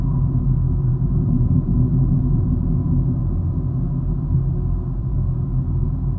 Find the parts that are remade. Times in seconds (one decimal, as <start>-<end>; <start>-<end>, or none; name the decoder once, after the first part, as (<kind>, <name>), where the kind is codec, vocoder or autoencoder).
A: 0.0-3.2 (vocoder, Vocos); 5.0-6.2